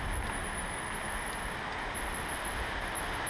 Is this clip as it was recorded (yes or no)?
yes